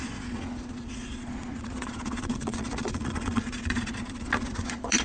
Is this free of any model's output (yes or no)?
no